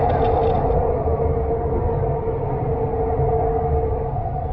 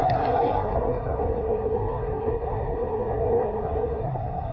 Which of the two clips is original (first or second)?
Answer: first